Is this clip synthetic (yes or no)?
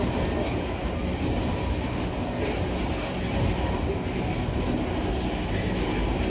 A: no